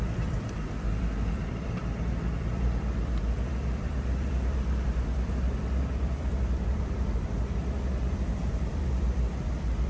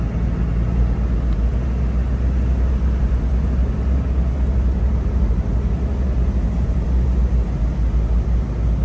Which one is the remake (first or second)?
first